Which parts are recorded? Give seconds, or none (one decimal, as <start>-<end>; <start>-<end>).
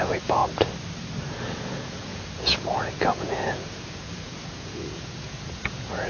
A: 0.4-1.5